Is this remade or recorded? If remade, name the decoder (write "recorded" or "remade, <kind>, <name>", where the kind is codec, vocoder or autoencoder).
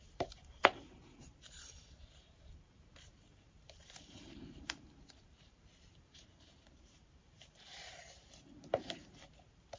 remade, vocoder, BigVGAN v2